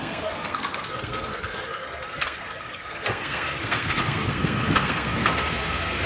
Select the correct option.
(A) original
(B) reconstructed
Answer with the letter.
B